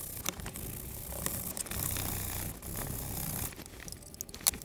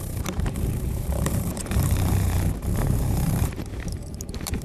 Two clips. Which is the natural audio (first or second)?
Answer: first